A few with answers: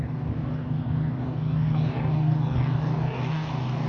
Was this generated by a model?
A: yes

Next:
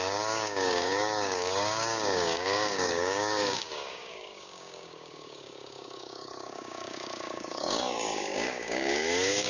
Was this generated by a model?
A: yes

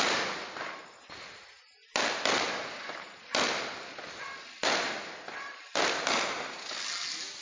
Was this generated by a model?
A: no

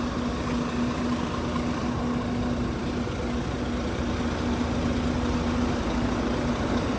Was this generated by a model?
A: no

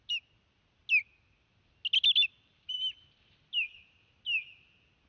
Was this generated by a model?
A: no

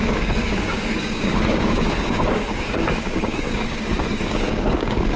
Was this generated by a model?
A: yes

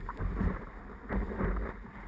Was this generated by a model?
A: no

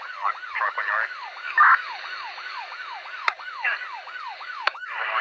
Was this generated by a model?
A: yes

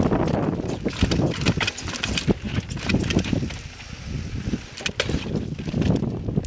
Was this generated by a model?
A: no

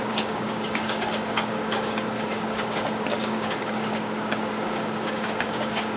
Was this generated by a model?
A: yes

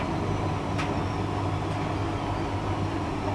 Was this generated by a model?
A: no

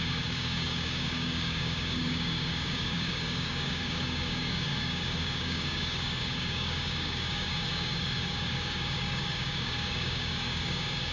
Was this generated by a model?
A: yes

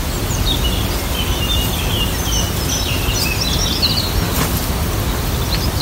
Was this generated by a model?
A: no